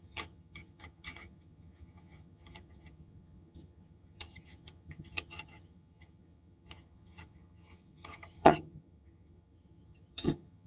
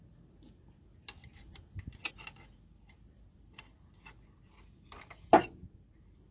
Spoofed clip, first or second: first